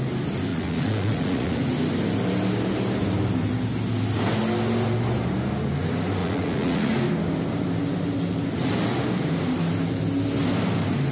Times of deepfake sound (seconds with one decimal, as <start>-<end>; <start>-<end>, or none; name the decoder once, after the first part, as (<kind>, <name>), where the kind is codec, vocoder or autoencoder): 0.5-1.6 (vocoder, Vocos); 6.2-6.9